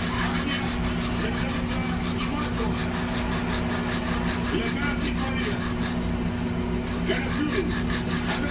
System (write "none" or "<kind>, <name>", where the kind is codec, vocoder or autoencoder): none